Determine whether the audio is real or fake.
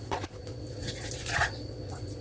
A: fake